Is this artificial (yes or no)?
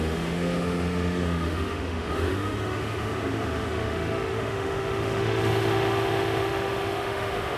yes